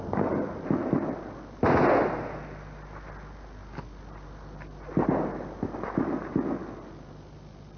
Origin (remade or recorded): recorded